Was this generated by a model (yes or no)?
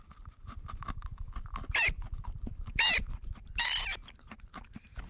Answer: no